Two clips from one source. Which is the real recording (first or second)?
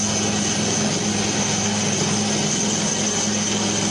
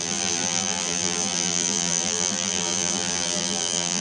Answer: first